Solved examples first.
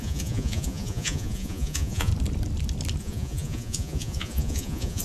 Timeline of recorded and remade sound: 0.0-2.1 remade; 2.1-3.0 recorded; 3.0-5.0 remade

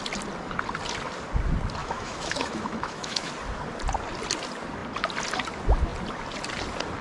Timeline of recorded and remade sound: 0.0-1.8 recorded; 1.8-3.3 remade; 3.3-7.0 recorded

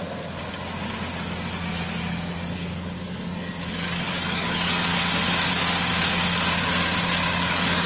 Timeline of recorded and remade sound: 0.0-1.7 recorded; 1.7-4.9 remade; 4.9-7.3 recorded; 7.3-7.9 remade

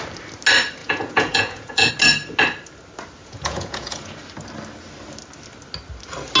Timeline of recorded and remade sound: 0.0-0.8 recorded; 0.8-1.9 remade; 1.9-3.2 recorded; 3.2-4.2 remade; 4.2-6.4 recorded

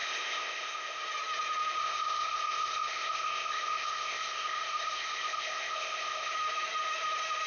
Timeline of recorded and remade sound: 0.0-1.0 remade; 1.0-1.8 recorded; 1.8-6.3 remade; 6.3-7.5 recorded

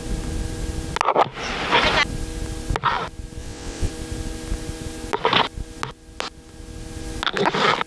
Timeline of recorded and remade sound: 0.0-3.4 recorded; 3.4-3.9 remade; 3.9-7.9 recorded

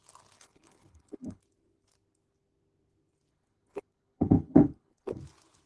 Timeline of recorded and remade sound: 0.0-0.4 recorded; 0.4-1.4 remade; 1.4-3.3 recorded; 3.3-5.2 remade; 5.2-5.7 recorded

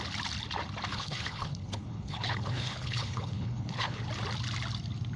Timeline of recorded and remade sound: 0.0-0.9 recorded; 0.9-4.0 remade; 4.0-5.2 recorded